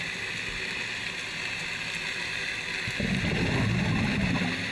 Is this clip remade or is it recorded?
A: recorded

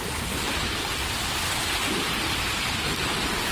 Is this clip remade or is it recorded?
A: recorded